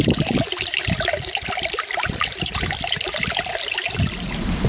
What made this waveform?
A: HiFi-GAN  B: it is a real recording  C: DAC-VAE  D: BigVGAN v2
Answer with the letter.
B